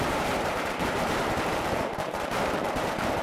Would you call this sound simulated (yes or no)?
yes